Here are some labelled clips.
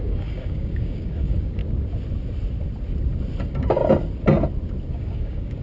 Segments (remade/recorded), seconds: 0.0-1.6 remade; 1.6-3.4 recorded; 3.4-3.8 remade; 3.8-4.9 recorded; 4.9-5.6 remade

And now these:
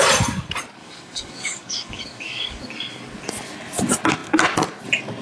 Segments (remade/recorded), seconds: 0.0-0.8 recorded; 0.8-2.6 remade; 2.6-5.2 recorded

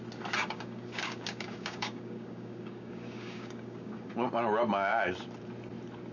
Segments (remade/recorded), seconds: 0.0-0.4 recorded; 0.4-4.1 remade; 4.1-6.1 recorded

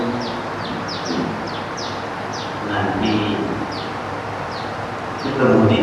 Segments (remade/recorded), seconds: 0.0-5.8 recorded

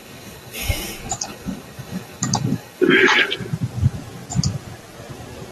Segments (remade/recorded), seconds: 0.0-3.3 remade; 3.3-5.5 recorded

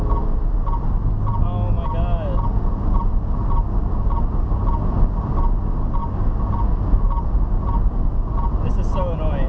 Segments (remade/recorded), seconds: 0.0-9.5 recorded

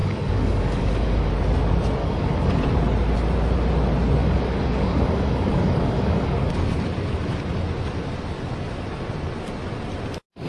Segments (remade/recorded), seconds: 0.0-1.3 remade; 1.3-2.0 recorded; 2.0-2.6 remade; 2.6-4.2 recorded; 4.2-6.5 remade; 6.5-10.5 recorded